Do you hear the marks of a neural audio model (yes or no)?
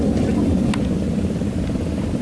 no